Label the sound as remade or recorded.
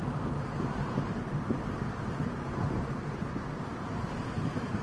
remade